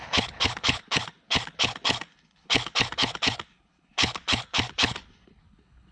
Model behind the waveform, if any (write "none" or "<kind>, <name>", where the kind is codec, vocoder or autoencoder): codec, HILCodec